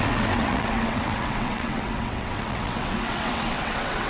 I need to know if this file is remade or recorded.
remade